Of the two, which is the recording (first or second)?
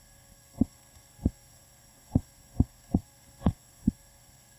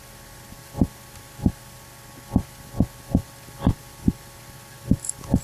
second